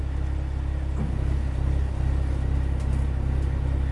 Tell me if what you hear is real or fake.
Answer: real